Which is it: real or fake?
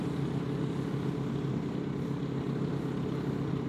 real